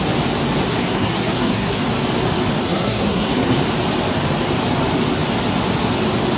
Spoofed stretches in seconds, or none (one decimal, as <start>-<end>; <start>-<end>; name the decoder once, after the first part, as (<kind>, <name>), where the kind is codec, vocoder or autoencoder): 0.7-1.8 (codec, SNAC); 2.6-3.6